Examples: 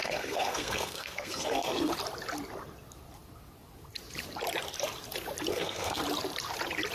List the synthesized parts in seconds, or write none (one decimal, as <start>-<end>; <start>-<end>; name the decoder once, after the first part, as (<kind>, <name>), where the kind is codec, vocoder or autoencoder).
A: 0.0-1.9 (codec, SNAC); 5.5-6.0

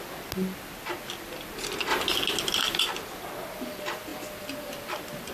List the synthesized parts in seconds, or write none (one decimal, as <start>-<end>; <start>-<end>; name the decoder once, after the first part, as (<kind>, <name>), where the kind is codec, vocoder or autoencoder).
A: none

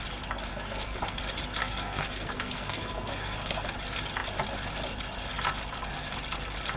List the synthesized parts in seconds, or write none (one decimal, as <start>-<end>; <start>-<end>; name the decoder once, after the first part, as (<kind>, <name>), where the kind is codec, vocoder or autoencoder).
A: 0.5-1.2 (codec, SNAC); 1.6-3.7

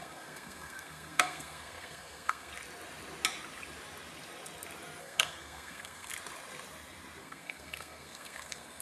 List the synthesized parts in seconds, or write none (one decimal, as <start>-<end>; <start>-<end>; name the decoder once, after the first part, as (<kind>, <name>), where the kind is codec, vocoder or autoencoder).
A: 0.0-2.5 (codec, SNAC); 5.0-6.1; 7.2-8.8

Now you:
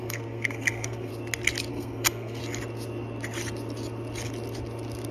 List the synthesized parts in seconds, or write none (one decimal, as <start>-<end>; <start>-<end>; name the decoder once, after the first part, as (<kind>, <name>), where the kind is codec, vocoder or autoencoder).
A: 0.0-1.1 (codec, SNAC); 1.7-2.4

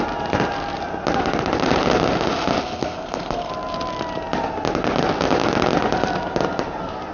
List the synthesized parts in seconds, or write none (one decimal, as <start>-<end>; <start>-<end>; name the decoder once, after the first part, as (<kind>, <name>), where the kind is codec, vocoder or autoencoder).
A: 2.6-3.5 (codec, SNAC)

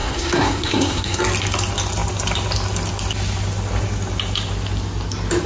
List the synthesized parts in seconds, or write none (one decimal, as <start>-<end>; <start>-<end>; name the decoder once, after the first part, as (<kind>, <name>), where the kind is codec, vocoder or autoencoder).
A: 0.0-1.2 (codec, SNAC)